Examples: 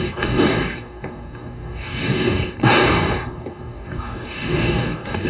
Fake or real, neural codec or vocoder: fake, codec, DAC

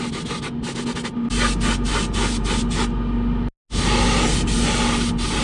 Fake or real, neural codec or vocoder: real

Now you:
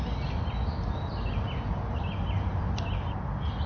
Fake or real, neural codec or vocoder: real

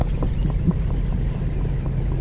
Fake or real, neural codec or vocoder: real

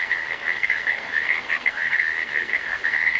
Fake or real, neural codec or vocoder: fake, codec, SNAC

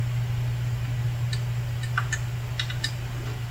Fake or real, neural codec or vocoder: real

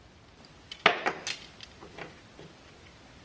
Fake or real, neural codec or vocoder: real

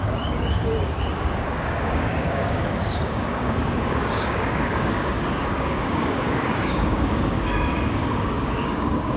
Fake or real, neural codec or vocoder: fake, codec, DAC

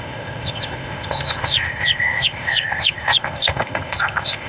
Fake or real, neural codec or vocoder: fake, codec, ZipCodec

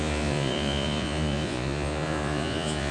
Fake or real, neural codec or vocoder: fake, vocoder, Vocos